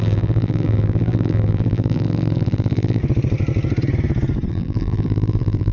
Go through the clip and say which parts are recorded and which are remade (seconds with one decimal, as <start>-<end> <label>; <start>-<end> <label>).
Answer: 0.0-3.0 remade; 3.0-4.5 recorded; 4.5-5.7 remade